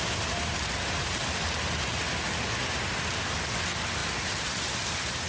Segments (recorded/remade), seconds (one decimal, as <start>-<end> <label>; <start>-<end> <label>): 0.0-4.0 recorded; 4.0-5.3 remade